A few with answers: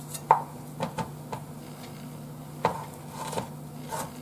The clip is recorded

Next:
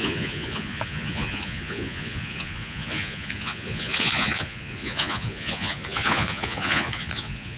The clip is remade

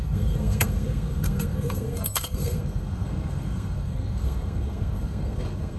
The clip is remade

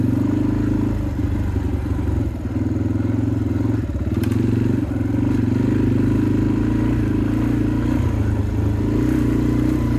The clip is recorded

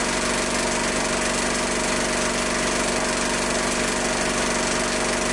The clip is recorded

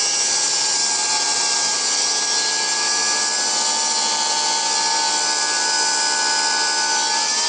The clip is recorded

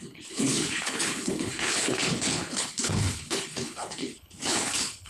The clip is remade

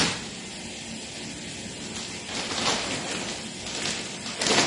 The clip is recorded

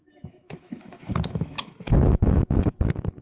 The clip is remade